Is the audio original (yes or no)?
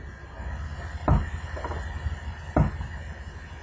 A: yes